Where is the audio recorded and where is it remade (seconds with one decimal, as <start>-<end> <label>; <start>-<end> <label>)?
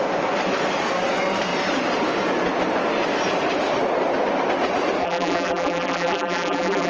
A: 0.0-5.0 recorded; 5.0-6.9 remade